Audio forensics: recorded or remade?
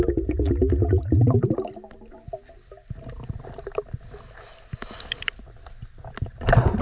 recorded